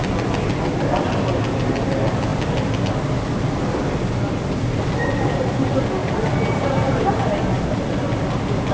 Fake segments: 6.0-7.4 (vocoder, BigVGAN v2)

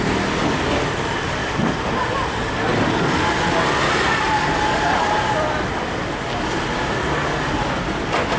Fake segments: 1.4-5.7 (vocoder, BigVGAN v2)